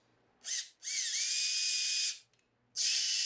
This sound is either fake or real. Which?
real